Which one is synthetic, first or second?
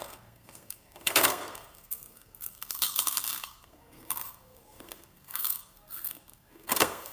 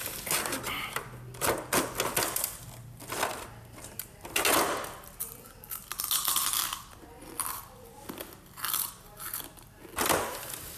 first